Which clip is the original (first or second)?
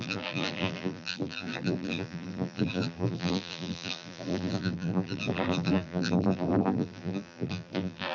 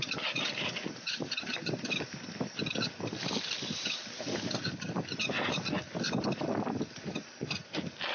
second